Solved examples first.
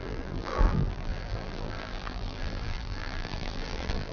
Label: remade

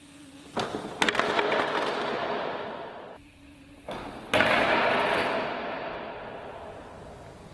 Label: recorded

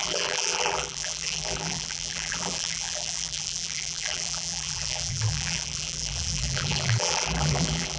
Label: remade